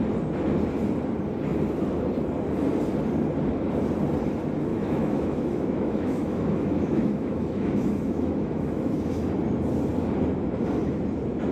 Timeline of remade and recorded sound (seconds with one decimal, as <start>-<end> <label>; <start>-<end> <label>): 0.0-4.7 recorded; 4.7-9.3 remade; 9.3-11.5 recorded